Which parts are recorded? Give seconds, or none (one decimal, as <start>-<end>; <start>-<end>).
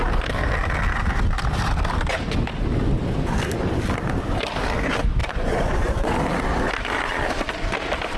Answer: 0.0-5.2; 6.1-8.2